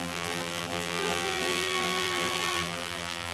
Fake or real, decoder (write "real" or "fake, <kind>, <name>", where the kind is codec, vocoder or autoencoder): fake, vocoder, BigVGAN v2